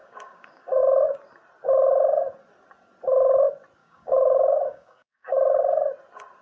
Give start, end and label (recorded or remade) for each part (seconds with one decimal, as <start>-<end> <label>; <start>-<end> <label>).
0.0-0.8 remade; 0.8-3.8 recorded; 3.8-5.6 remade; 5.6-6.4 recorded

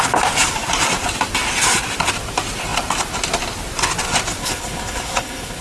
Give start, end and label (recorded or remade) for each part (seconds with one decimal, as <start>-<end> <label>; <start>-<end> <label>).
0.0-4.4 recorded; 4.4-5.6 remade

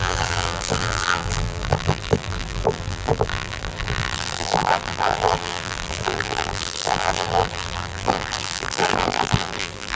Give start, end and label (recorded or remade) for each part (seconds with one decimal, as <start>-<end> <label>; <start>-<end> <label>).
0.0-10.0 remade

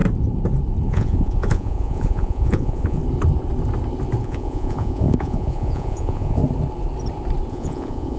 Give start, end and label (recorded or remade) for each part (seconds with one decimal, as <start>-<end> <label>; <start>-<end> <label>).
0.0-0.9 recorded; 0.9-3.0 remade; 3.0-4.2 recorded; 4.2-6.4 remade; 6.4-7.5 recorded; 7.5-8.2 remade

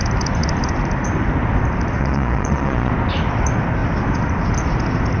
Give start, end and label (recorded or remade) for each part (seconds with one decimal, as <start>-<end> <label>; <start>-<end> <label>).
0.0-2.0 recorded; 2.0-2.9 remade; 2.9-5.2 recorded

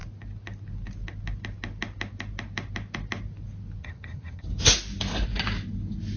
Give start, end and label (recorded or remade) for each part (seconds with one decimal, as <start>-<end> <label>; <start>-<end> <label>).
0.0-3.8 recorded; 3.8-4.4 remade; 4.4-6.2 recorded